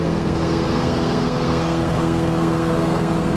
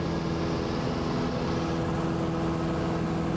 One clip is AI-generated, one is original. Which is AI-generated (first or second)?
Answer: first